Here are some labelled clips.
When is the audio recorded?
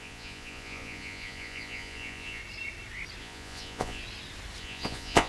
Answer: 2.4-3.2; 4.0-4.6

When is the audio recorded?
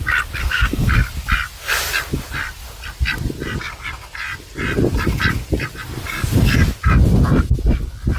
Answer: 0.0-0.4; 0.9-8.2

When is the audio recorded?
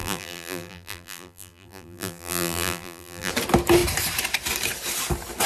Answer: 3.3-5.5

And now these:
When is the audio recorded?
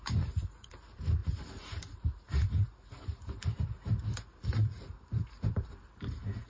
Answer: none